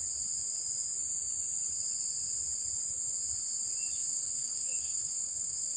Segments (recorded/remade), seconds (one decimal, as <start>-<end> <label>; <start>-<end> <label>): 0.0-4.0 recorded; 4.0-5.8 remade